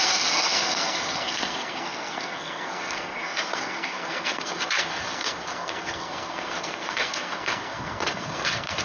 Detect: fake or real fake